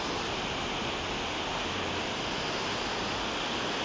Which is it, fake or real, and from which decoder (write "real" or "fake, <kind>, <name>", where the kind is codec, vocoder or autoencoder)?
real